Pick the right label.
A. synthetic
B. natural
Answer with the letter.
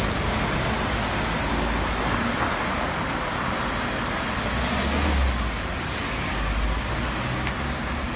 B